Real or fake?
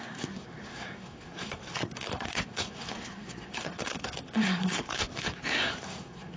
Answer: fake